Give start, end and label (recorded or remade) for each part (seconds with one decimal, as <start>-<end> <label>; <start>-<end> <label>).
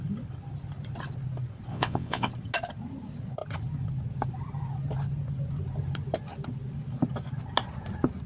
0.0-1.7 recorded; 1.7-2.3 remade; 2.3-8.3 recorded